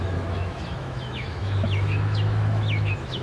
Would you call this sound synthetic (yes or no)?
yes